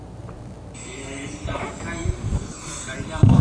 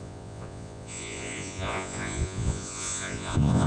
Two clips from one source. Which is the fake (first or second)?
second